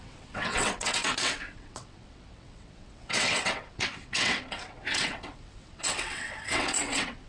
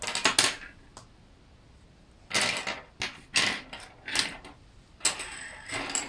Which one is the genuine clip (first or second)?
second